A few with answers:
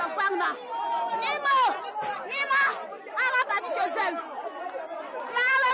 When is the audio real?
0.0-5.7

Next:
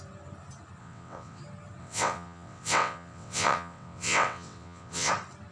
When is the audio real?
0.0-0.8; 1.4-1.8; 5.1-5.5

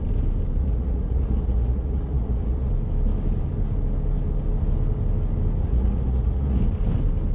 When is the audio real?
0.0-0.6; 2.7-5.6; 6.6-7.3

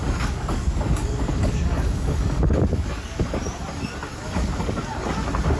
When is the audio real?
3.4-4.1; 4.8-5.6

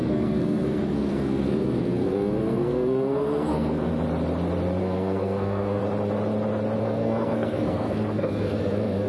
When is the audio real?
3.9-4.8; 5.8-6.8

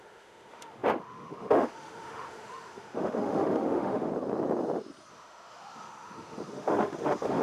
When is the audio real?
4.1-5.1

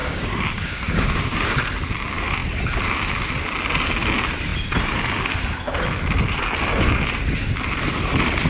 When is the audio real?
1.5-8.5